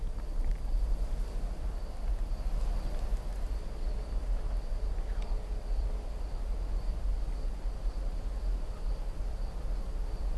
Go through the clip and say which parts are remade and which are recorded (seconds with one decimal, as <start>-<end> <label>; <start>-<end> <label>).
0.0-10.4 recorded